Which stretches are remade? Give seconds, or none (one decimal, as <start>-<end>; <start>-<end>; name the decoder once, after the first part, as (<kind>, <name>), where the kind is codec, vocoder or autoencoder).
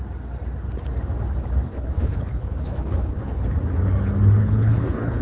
1.7-3.5 (codec, HILCodec); 4.4-5.2